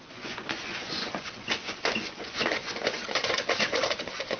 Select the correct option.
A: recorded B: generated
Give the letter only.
B